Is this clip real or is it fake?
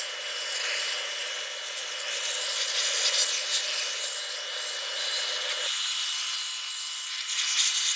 real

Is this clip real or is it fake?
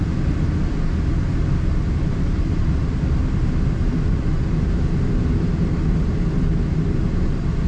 real